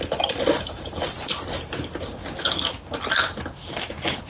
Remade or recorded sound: recorded